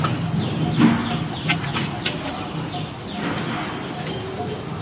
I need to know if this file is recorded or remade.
recorded